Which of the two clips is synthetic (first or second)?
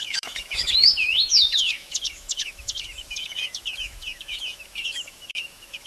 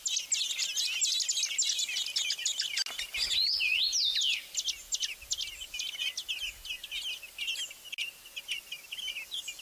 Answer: first